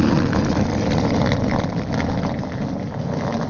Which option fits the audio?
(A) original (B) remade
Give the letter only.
A